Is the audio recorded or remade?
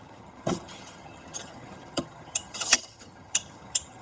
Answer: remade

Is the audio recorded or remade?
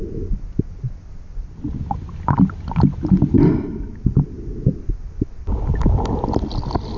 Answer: recorded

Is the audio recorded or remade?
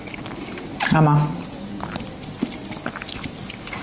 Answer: recorded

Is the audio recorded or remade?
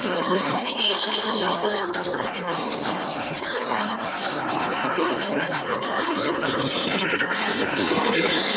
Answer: remade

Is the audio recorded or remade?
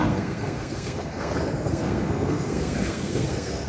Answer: remade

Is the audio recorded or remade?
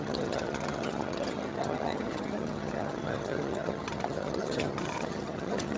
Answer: remade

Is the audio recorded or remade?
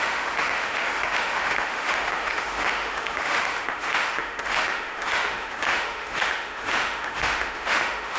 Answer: remade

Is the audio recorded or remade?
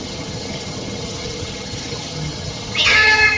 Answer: remade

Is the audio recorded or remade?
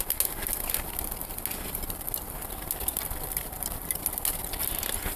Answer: recorded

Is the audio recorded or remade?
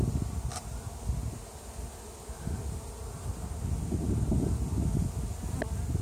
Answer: recorded